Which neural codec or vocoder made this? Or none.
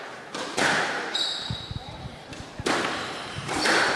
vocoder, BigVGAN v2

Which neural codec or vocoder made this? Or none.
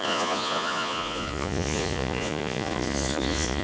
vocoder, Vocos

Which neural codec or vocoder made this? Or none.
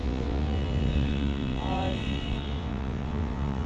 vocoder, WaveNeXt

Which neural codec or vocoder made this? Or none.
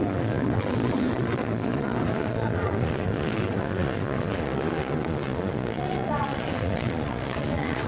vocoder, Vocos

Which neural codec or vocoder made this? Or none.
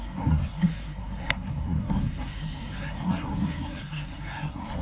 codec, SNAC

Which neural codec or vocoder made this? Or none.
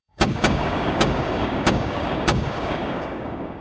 codec, DAC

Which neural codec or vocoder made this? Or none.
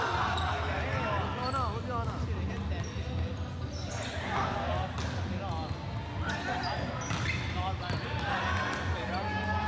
none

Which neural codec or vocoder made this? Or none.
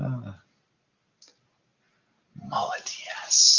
none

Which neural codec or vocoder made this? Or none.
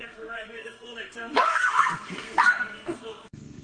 codec, SNAC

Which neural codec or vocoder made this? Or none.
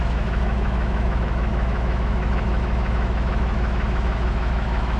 autoencoder, DAC-VAE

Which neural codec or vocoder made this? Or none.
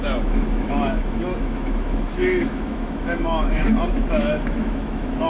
autoencoder, DAC-VAE